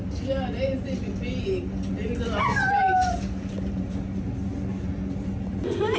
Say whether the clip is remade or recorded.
recorded